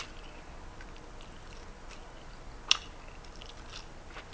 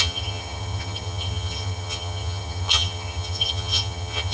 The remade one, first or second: second